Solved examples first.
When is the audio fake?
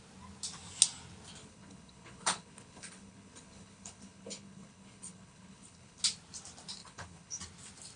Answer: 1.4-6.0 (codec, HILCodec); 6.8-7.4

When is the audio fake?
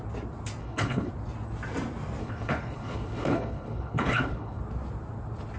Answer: 0.6-1.1 (codec, HILCodec); 2.2-4.6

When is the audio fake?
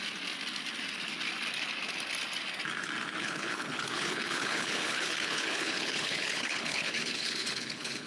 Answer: 3.2-8.1 (codec, HILCodec)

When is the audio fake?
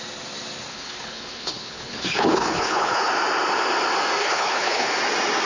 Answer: 0.7-3.1 (codec, HILCodec); 4.2-5.0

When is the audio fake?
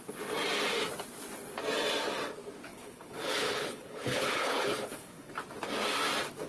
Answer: 2.7-5.3 (codec, HILCodec)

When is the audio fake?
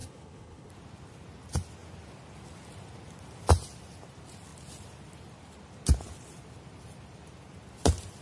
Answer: 0.0-0.7 (codec, HILCodec)